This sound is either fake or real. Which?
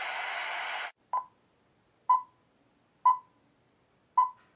real